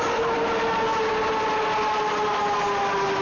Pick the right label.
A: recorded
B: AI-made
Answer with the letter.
A